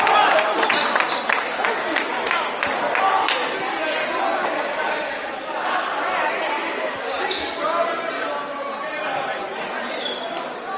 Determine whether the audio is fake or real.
real